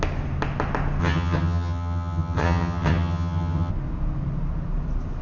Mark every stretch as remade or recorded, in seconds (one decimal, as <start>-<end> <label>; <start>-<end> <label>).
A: 0.0-1.0 recorded; 1.0-3.7 remade; 3.7-5.2 recorded